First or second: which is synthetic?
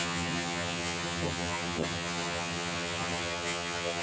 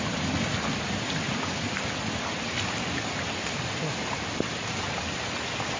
first